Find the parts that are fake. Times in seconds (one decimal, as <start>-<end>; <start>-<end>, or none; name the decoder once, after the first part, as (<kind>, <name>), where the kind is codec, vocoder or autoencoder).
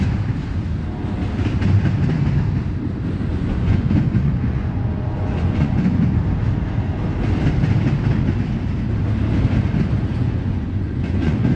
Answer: 3.3-6.2 (vocoder, Vocos); 10.1-11.6